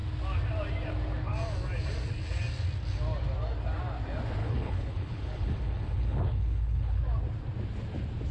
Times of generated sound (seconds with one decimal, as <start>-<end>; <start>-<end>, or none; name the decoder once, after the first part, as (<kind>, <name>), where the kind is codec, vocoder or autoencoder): 4.4-7.0 (codec, HILCodec)